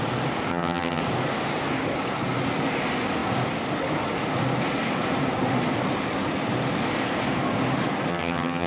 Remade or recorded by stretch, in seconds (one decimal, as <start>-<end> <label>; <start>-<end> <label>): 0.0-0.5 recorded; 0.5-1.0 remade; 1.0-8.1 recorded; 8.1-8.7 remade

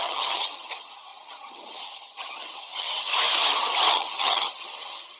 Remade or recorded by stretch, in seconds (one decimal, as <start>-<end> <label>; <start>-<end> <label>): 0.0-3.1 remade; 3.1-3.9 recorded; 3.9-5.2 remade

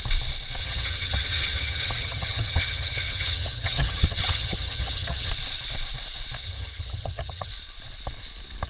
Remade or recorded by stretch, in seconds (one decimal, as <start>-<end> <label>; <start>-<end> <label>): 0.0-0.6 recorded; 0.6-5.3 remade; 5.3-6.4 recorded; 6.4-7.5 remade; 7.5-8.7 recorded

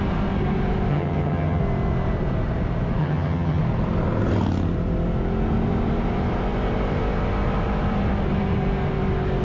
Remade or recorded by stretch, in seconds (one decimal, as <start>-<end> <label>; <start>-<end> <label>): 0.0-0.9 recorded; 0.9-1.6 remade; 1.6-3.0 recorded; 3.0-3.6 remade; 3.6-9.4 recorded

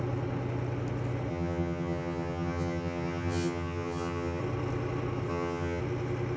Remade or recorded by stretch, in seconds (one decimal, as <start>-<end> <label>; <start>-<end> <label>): 0.0-1.3 recorded; 1.3-4.4 remade; 4.4-5.3 recorded; 5.3-5.8 remade; 5.8-6.4 recorded

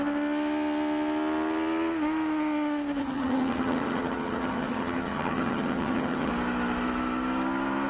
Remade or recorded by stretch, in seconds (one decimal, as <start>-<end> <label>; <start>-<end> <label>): 0.0-3.0 recorded; 3.0-6.3 remade; 6.3-7.9 recorded

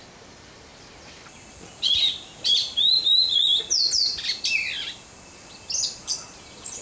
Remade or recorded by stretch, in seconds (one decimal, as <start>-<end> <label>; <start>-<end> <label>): 0.0-6.8 recorded